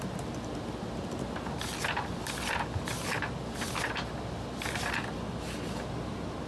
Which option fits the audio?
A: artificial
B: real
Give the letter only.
B